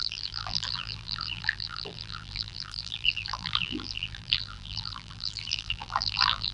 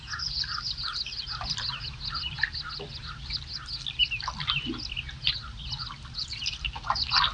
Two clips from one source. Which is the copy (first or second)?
first